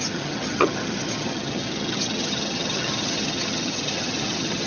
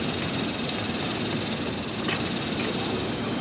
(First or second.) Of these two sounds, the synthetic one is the first